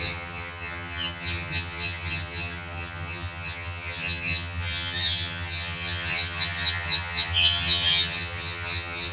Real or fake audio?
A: fake